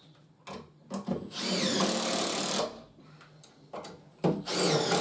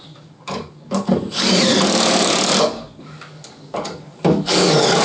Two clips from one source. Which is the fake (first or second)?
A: second